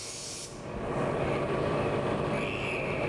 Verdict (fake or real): real